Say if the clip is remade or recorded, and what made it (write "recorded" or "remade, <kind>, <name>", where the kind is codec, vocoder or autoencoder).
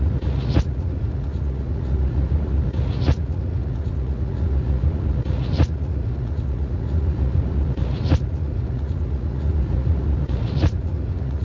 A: remade, vocoder, Vocos